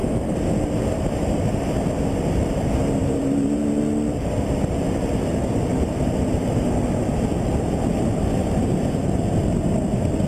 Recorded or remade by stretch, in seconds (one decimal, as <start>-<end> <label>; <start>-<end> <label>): 0.0-1.6 remade; 1.6-3.0 recorded; 3.0-3.8 remade; 3.8-5.3 recorded; 5.3-6.0 remade; 6.0-8.4 recorded; 8.4-9.0 remade; 9.0-10.3 recorded